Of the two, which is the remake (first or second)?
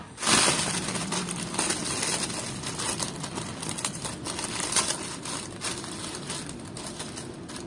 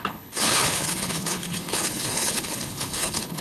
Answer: second